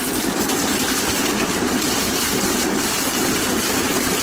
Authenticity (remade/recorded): recorded